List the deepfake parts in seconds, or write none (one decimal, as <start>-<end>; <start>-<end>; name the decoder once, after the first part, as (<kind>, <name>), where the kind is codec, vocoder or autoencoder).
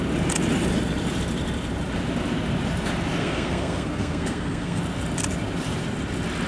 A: 3.2-4.8 (codec, SNAC)